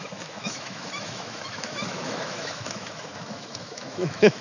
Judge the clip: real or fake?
fake